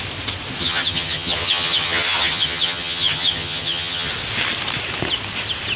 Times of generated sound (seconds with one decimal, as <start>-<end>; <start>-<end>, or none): 0.6-4.1